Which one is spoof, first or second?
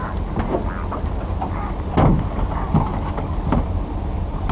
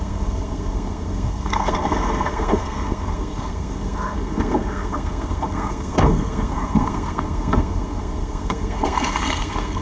second